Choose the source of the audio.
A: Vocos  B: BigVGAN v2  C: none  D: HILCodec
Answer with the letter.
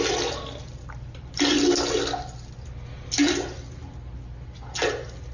C